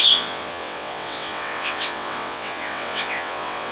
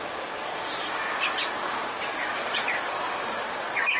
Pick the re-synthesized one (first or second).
first